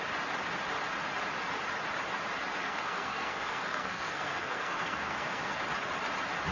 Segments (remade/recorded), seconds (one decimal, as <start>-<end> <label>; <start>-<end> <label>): 0.0-2.6 recorded; 2.6-5.6 remade; 5.6-6.5 recorded